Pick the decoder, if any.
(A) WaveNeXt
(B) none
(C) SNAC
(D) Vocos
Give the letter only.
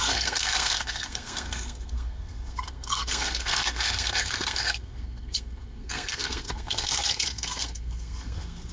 C